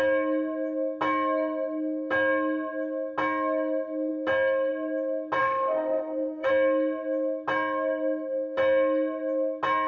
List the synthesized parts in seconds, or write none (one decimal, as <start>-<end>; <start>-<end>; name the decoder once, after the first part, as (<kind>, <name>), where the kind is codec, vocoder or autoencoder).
5.4-6.5 (autoencoder, DAC-VAE)